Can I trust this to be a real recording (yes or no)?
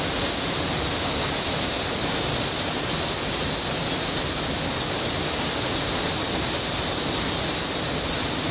yes